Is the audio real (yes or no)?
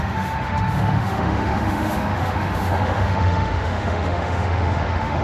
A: no